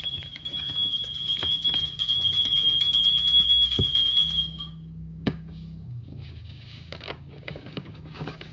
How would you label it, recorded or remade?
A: remade